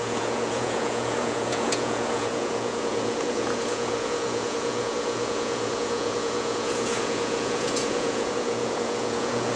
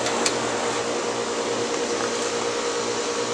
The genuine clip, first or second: second